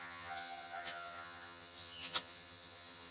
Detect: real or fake fake